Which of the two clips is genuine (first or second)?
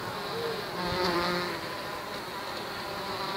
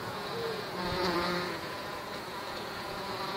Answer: first